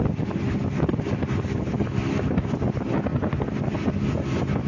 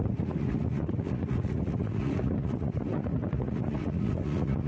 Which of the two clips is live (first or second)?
first